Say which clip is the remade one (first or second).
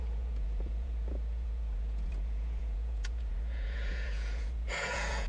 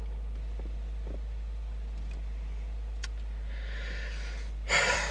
first